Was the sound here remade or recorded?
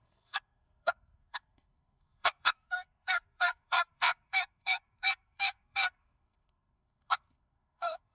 remade